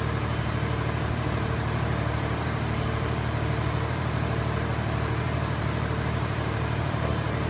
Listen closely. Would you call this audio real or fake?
fake